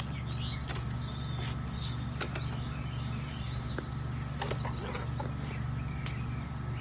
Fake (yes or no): no